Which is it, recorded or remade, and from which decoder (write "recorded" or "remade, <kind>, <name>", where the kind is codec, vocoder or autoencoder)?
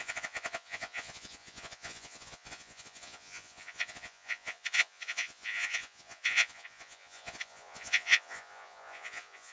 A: remade, vocoder, Vocos